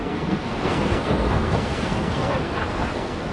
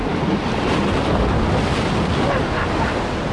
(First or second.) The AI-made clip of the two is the first